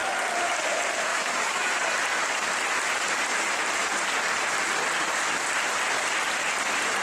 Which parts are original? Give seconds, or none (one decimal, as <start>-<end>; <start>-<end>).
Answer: 0.0-1.1; 1.7-7.0

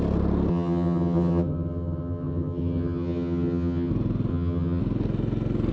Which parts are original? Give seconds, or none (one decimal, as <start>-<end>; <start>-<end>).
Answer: 0.0-0.5; 3.9-4.3; 4.8-5.7

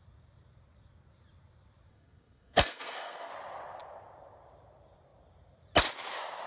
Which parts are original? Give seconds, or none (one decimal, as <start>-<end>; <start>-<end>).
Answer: 0.0-1.9; 3.3-6.5

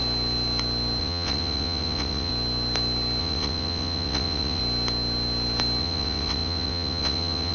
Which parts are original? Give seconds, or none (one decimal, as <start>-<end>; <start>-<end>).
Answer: 0.0-1.0; 2.3-3.2; 4.6-5.8

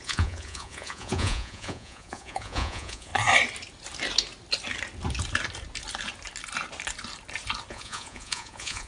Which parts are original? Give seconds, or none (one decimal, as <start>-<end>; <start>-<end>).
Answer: 3.1-7.7

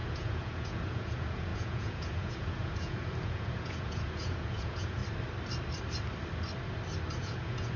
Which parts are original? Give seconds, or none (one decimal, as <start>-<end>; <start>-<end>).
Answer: 5.0-7.2

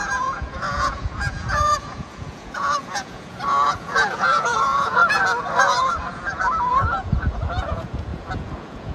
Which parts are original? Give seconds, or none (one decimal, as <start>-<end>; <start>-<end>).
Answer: 5.0-5.6